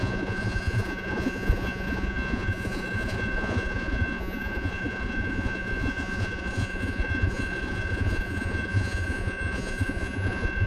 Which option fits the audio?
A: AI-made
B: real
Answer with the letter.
A